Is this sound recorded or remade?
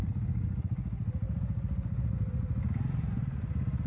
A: recorded